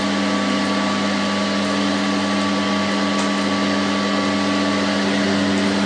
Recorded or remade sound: recorded